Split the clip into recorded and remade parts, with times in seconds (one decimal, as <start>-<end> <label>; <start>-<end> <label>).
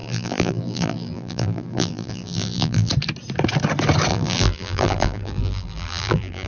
0.0-2.9 remade; 2.9-4.1 recorded; 4.1-6.5 remade